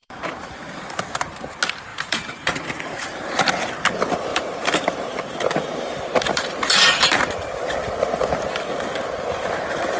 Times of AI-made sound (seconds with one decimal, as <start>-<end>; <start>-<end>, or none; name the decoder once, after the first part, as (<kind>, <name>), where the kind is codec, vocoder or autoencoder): 0.0-0.5 (vocoder, BigVGAN v2); 1.9-3.5; 4.3-7.3

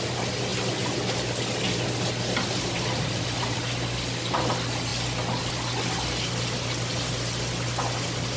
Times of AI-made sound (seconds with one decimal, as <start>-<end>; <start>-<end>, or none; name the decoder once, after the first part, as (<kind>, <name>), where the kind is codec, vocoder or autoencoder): none

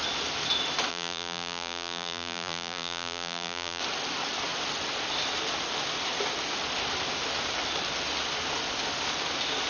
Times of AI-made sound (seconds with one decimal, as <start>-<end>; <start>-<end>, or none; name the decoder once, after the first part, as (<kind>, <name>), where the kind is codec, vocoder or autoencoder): 0.9-3.8 (vocoder, BigVGAN v2)

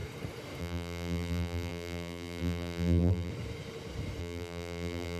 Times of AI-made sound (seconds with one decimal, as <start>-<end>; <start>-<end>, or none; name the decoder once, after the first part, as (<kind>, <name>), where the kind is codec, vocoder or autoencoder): 0.6-3.3 (vocoder, BigVGAN v2); 4.2-5.2

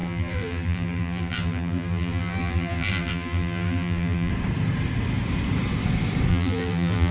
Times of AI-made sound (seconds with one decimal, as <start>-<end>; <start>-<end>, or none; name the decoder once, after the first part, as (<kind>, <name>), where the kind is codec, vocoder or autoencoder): 0.0-4.3 (vocoder, BigVGAN v2); 6.3-7.1

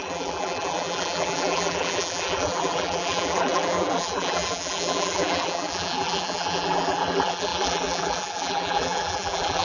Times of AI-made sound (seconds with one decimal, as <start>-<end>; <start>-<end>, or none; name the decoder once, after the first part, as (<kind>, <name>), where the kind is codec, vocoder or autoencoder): 0.0-9.6 (vocoder, BigVGAN v2)

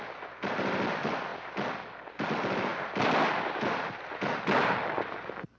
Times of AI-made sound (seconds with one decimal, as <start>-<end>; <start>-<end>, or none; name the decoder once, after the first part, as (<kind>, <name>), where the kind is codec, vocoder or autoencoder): none

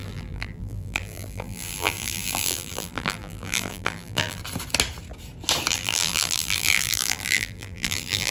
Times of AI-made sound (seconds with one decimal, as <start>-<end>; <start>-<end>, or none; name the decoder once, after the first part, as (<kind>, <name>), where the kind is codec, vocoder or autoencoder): 0.0-4.4 (vocoder, BigVGAN v2); 5.7-8.3